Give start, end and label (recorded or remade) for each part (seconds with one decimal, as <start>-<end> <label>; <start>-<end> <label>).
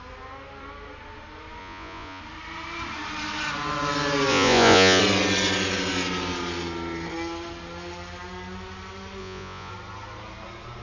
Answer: 0.0-1.6 recorded; 1.6-2.2 remade; 2.2-4.3 recorded; 4.3-5.0 remade; 5.0-9.2 recorded; 9.2-9.7 remade; 9.7-10.8 recorded